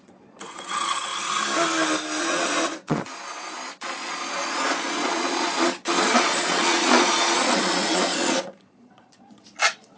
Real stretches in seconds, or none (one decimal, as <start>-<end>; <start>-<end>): 1.1-2.2; 3.1-3.7